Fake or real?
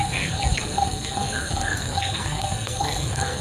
fake